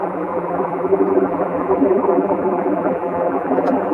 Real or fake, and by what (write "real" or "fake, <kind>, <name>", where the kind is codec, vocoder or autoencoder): fake, vocoder, BigVGAN v2